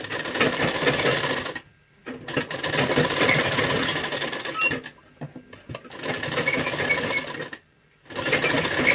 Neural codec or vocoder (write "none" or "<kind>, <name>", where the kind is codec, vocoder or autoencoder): none